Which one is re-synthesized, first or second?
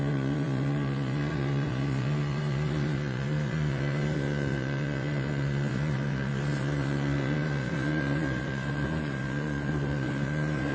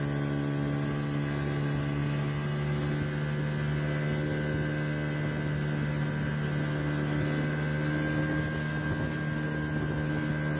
first